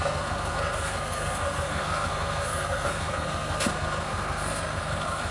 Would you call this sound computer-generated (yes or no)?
yes